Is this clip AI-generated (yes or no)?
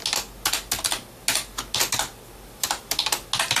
no